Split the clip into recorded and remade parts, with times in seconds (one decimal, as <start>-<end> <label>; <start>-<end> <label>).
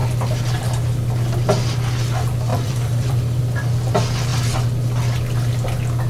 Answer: 0.0-2.5 recorded; 2.5-3.4 remade; 3.4-6.1 recorded